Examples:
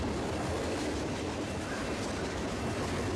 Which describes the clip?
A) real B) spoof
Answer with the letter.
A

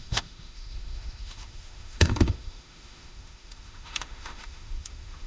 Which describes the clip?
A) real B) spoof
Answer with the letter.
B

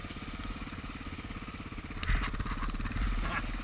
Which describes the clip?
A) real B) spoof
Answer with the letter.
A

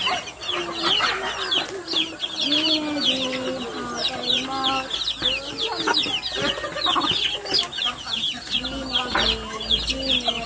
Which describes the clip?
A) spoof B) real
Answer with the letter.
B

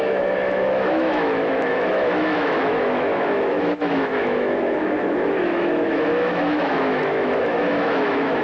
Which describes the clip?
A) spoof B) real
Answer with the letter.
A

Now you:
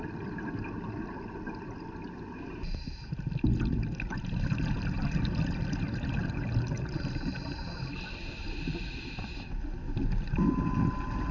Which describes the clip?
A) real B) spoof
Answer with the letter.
A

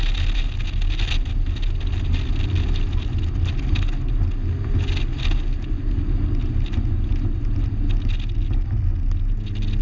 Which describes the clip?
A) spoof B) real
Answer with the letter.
B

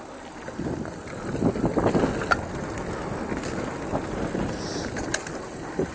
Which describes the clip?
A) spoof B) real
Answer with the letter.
B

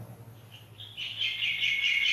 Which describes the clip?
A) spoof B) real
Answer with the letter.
B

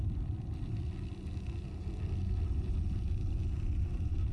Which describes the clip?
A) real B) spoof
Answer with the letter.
A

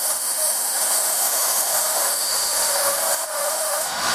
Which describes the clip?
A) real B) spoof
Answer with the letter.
B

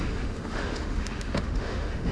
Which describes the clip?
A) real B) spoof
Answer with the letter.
B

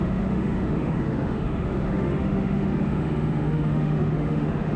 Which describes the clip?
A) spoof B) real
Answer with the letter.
A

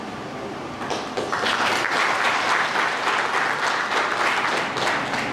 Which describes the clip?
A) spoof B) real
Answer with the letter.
B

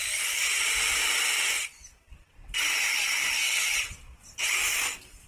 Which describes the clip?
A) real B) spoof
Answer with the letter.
A